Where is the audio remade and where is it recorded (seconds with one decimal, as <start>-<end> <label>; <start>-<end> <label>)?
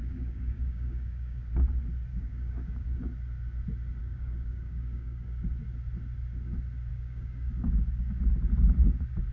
0.0-1.5 remade; 1.5-2.1 recorded; 2.1-3.0 remade; 3.0-4.0 recorded; 4.0-5.5 remade; 5.5-6.9 recorded; 6.9-8.2 remade; 8.2-9.3 recorded